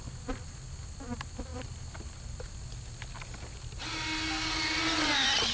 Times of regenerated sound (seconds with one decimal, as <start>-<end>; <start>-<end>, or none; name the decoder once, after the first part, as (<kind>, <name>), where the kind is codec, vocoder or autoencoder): none